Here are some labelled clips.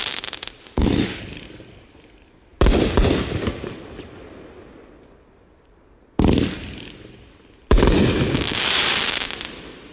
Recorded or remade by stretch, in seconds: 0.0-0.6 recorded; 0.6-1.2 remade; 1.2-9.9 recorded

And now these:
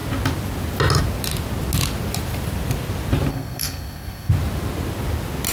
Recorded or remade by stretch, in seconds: 0.0-3.3 recorded; 3.3-4.3 remade; 4.3-5.5 recorded

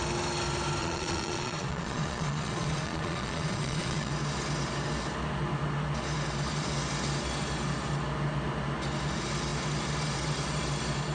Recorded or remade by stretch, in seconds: 0.0-0.8 recorded; 0.8-4.1 remade; 4.1-11.1 recorded

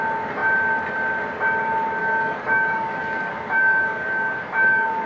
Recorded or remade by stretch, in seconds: 0.0-2.0 recorded; 2.0-5.1 remade

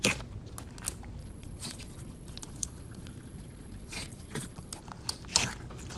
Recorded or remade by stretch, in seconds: 0.0-1.2 recorded; 1.2-4.8 remade; 4.8-6.0 recorded

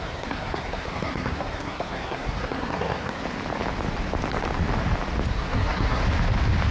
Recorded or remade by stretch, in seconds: 0.0-3.2 remade; 3.2-5.3 recorded; 5.3-6.0 remade; 6.0-6.7 recorded

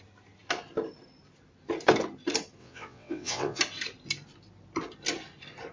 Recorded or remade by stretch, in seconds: 0.0-2.6 recorded; 2.6-3.6 remade; 3.6-5.7 recorded

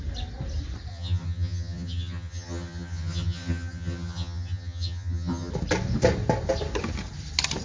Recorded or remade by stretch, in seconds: 0.0-0.9 recorded; 0.9-5.5 remade; 5.5-7.6 recorded